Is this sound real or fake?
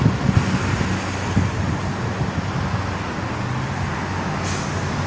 real